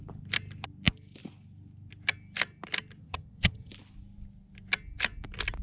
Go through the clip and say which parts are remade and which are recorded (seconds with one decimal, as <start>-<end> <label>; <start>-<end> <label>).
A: 0.0-3.0 recorded; 3.0-3.7 remade; 3.7-5.6 recorded